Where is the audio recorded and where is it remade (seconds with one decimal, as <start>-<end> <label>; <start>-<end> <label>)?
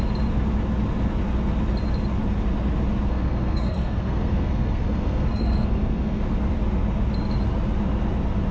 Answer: 0.0-3.1 recorded; 3.1-6.2 remade; 6.2-8.5 recorded